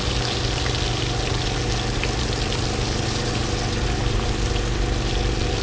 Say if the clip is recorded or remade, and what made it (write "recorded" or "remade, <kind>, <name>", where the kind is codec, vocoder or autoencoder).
recorded